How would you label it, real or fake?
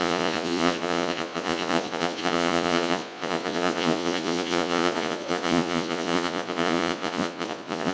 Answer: fake